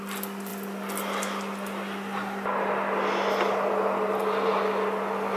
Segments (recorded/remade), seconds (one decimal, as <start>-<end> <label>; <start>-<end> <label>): 0.0-5.4 recorded